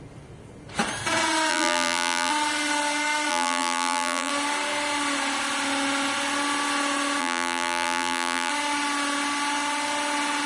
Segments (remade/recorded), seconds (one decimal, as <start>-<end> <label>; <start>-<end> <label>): 0.0-1.5 recorded; 1.5-2.3 remade; 2.3-3.3 recorded; 3.3-4.3 remade; 4.3-7.2 recorded; 7.2-8.5 remade; 8.5-10.5 recorded